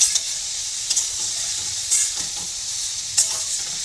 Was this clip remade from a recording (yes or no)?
yes